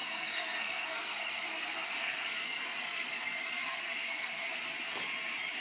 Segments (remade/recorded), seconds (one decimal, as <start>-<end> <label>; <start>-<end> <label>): 0.0-4.6 remade; 4.6-5.6 recorded